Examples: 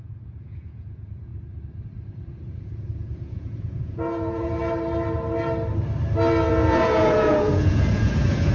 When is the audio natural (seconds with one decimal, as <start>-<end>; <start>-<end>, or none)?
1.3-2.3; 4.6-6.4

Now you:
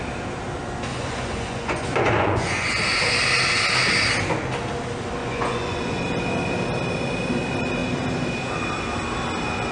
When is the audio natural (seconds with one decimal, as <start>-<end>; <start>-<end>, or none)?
0.0-0.9; 2.8-5.2; 6.0-9.7

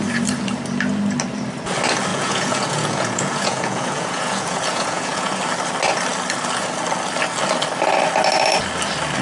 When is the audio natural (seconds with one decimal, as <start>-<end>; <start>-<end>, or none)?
0.0-2.1; 5.4-9.2

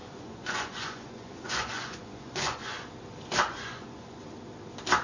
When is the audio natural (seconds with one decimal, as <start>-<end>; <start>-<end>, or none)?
2.9-3.5; 4.2-5.0